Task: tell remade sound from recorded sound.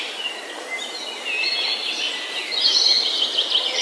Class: recorded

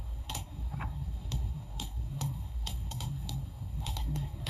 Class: remade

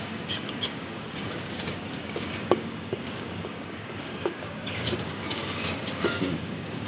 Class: remade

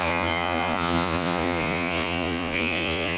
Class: remade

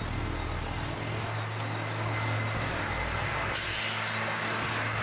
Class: recorded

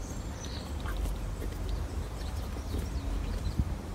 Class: recorded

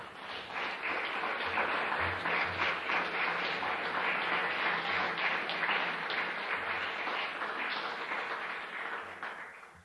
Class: recorded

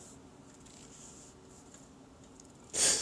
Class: recorded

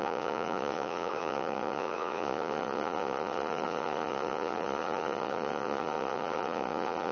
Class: remade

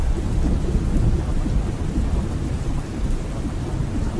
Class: recorded